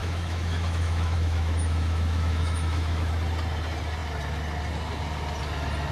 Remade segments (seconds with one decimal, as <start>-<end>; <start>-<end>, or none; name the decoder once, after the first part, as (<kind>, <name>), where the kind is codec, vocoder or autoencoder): 0.0-3.1 (autoencoder, DAC-VAE)